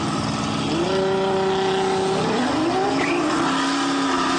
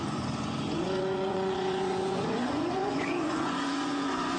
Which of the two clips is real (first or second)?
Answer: first